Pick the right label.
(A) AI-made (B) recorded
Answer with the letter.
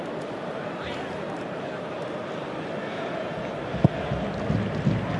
B